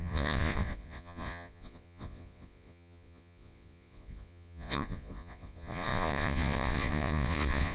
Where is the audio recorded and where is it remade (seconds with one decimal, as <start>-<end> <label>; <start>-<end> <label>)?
0.0-7.7 remade